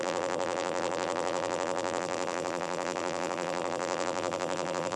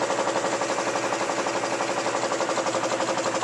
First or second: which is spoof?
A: first